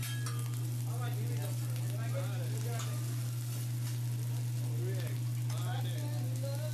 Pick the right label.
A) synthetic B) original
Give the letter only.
B